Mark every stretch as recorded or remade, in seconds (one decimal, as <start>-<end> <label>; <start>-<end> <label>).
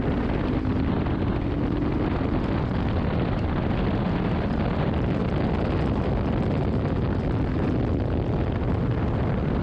0.0-9.6 recorded